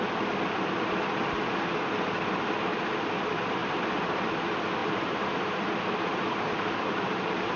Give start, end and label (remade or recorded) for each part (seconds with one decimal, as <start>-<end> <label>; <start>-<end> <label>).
0.0-3.6 recorded; 3.6-4.3 remade; 4.3-4.8 recorded; 4.8-7.6 remade